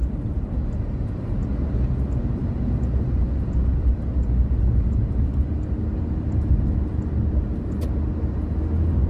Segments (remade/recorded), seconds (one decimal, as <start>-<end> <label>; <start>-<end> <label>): 0.0-9.1 recorded